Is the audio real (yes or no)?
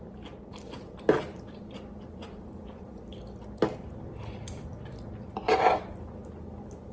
yes